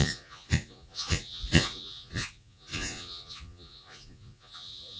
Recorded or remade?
remade